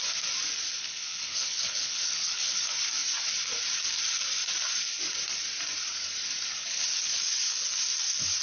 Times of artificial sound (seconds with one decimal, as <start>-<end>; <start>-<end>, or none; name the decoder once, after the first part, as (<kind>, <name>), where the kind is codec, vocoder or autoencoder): 0.8-2.6 (codec, HILCodec); 6.6-7.3